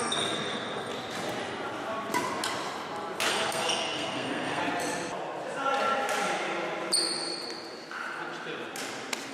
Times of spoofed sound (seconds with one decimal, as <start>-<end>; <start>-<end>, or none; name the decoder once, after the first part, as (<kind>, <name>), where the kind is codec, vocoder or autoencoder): 0.0-0.9 (codec, SNAC); 3.3-4.6